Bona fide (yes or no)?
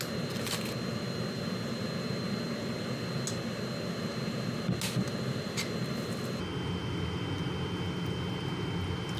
yes